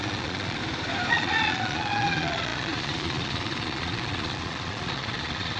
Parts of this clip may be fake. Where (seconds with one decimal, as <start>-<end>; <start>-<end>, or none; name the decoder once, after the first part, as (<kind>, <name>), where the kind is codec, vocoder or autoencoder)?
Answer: 0.0-0.6 (vocoder, Vocos); 1.1-5.6

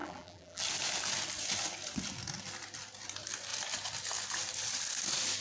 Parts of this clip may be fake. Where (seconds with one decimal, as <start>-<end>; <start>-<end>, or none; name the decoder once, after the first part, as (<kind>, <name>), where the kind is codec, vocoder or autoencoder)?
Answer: 0.0-0.6 (vocoder, BigVGAN v2)

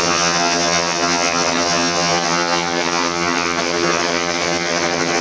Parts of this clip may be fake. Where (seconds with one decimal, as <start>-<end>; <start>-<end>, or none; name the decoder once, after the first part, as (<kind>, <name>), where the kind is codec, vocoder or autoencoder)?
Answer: 0.0-5.2 (vocoder, HiFi-GAN)